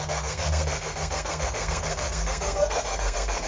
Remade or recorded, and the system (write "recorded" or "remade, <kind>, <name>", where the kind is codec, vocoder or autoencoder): remade, codec, SNAC